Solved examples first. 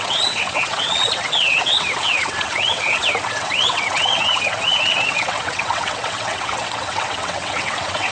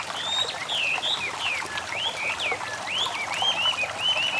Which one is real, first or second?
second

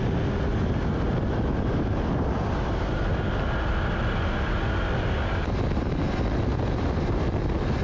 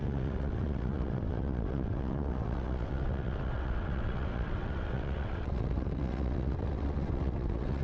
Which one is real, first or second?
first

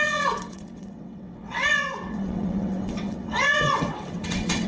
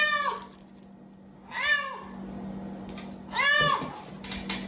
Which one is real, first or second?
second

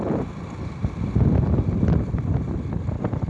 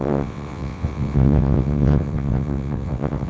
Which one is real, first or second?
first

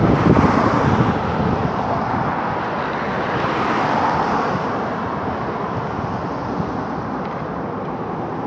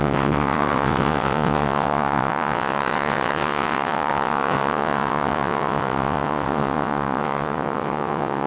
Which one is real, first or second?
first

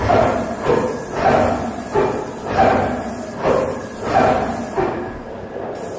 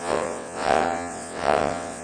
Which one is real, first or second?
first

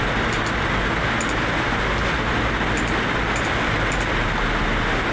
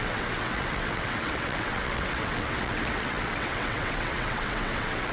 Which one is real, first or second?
first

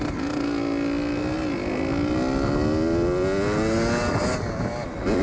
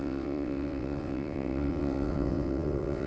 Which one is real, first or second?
first